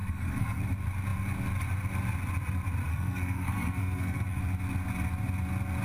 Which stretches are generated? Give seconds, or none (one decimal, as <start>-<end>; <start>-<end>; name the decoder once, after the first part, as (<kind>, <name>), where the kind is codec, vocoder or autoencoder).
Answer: 0.0-0.6 (codec, SNAC); 2.9-4.4